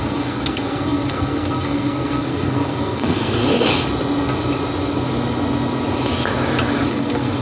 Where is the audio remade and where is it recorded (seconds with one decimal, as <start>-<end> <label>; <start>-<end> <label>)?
0.0-3.4 remade; 3.4-6.9 recorded; 6.9-7.4 remade